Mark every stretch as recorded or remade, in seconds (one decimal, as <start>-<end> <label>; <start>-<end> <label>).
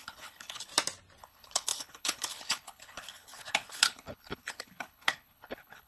0.0-0.7 remade; 0.7-1.2 recorded; 1.2-5.9 remade